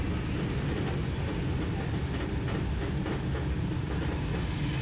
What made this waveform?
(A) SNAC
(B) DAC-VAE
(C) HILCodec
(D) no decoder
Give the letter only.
D